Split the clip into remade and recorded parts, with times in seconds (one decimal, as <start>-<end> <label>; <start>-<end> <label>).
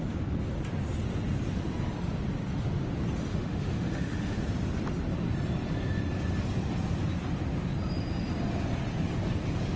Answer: 0.0-3.3 recorded; 3.3-4.4 remade; 4.4-9.8 recorded